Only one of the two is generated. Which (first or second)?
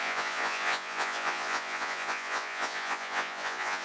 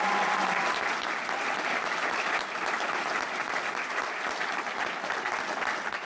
first